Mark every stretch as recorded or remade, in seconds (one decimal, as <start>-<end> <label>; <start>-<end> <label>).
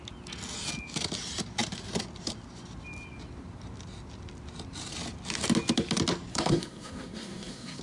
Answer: 0.0-6.3 recorded; 6.3-7.8 remade